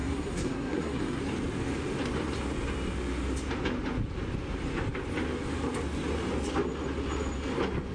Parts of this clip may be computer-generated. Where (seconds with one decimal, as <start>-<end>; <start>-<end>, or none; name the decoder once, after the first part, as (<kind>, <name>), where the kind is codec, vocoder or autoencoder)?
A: 0.0-1.2 (codec, SNAC)